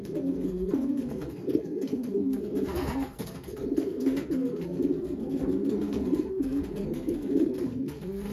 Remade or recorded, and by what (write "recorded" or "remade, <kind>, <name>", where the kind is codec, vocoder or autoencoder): remade, codec, SNAC